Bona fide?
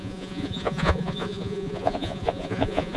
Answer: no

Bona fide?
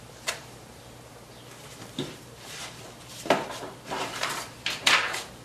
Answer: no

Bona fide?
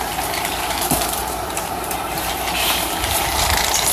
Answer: no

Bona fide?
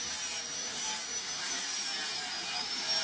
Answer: yes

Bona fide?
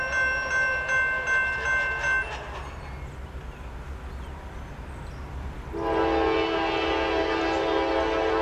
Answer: yes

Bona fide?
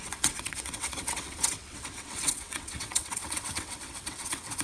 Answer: no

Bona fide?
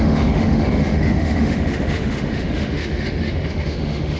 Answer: no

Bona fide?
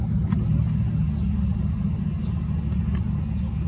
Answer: yes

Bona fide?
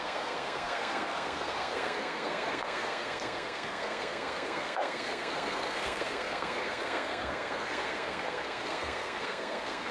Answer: no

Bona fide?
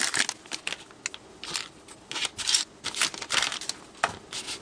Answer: yes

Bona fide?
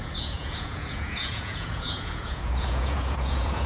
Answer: no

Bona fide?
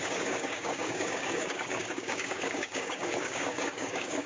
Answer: no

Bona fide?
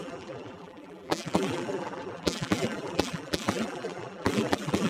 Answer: no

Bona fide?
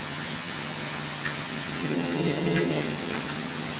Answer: no